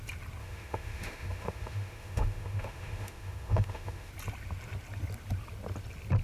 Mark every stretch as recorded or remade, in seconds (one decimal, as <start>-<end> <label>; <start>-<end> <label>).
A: 0.0-0.4 recorded; 0.4-4.1 remade; 4.1-6.2 recorded